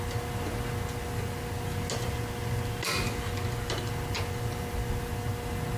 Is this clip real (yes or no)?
yes